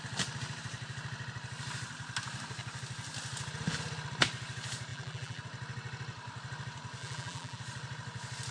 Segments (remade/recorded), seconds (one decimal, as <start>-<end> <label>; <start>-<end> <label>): 0.0-4.9 recorded; 4.9-5.4 remade; 5.4-7.0 recorded; 7.0-7.6 remade; 7.6-8.5 recorded